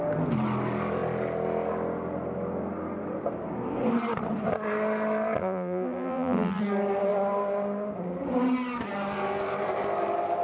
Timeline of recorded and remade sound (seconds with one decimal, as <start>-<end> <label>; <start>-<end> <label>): 0.0-5.4 recorded; 5.4-6.6 remade; 6.6-10.4 recorded